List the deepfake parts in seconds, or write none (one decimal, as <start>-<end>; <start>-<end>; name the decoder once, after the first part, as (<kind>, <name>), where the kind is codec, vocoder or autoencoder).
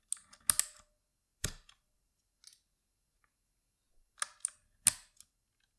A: 1.3-2.2 (vocoder, BigVGAN v2)